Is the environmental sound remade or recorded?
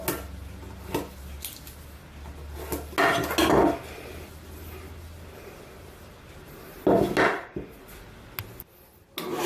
recorded